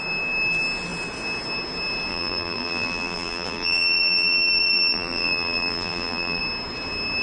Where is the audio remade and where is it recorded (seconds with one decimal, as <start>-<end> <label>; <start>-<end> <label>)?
0.0-2.1 recorded; 2.1-6.4 remade; 6.4-7.2 recorded